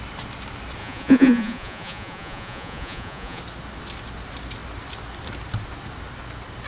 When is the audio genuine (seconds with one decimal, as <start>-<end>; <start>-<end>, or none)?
0.0-0.8; 3.4-6.7